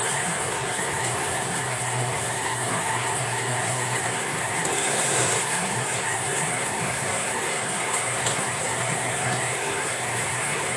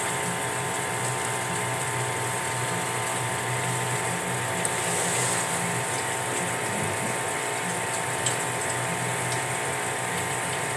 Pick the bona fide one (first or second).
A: second